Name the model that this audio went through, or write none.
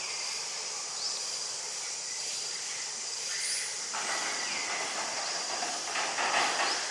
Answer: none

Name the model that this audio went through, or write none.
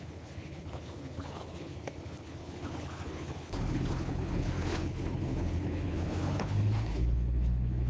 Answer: codec, HILCodec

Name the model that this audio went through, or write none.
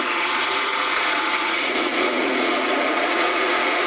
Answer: vocoder, Vocos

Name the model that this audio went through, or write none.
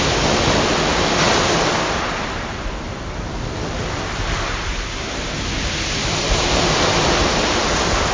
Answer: none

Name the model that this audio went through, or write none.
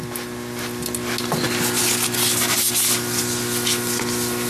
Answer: none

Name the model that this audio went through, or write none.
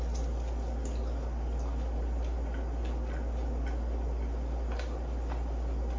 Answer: none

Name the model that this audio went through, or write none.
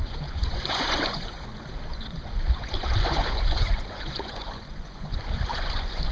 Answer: vocoder, Vocos